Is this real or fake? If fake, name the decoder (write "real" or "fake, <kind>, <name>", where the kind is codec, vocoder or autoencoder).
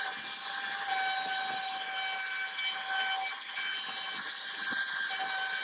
real